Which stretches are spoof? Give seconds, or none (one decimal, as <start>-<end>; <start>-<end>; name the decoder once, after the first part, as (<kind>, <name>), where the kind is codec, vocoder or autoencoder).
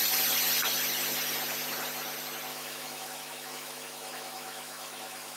2.5-5.4 (autoencoder, DAC-VAE)